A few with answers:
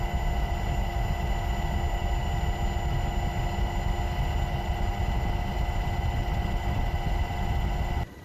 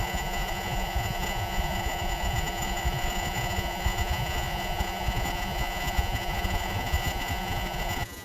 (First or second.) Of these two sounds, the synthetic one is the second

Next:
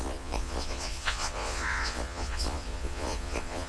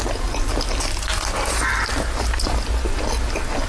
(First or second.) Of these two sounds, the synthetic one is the first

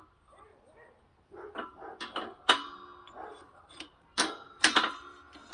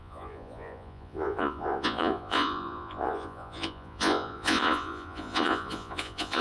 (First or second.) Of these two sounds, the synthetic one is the second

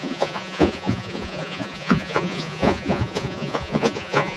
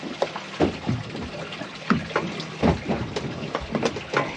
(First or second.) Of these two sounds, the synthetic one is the first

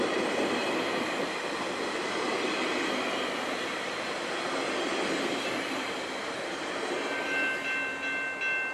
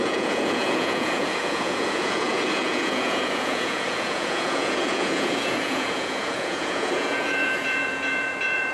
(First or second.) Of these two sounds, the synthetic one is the second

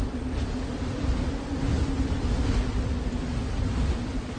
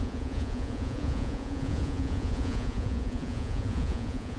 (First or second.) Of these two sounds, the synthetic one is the second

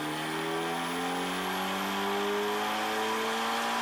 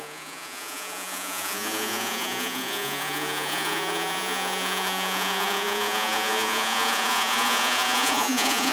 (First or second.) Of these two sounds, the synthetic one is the second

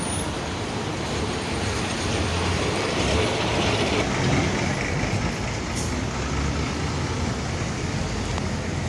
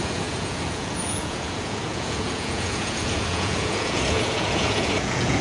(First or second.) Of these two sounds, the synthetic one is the second